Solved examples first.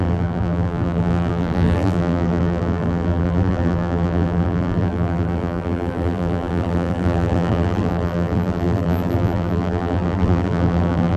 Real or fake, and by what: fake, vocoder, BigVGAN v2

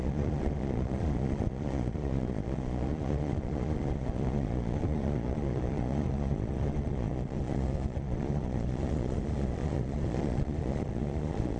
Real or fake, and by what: fake, vocoder, Vocos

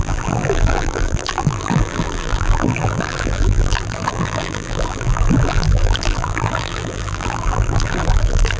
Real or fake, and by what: fake, vocoder, BigVGAN v2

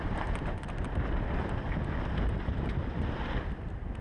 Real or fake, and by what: fake, vocoder, BigVGAN v2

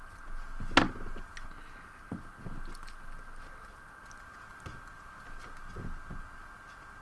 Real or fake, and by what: real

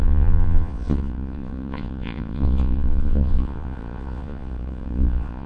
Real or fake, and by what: fake, vocoder, Vocos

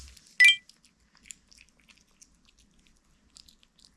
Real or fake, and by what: real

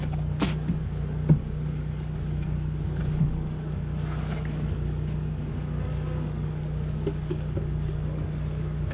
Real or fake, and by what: fake, codec, DAC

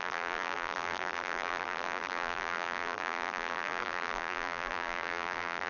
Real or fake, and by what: fake, vocoder, BigVGAN v2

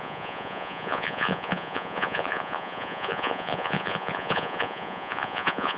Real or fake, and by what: fake, vocoder, Vocos